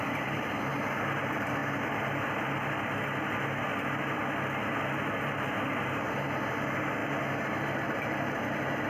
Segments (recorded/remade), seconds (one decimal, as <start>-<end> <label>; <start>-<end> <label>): 0.0-0.7 remade; 0.7-1.2 recorded; 1.2-1.6 remade; 1.6-5.1 recorded; 5.1-8.9 remade